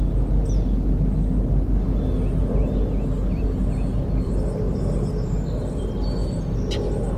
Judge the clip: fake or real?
real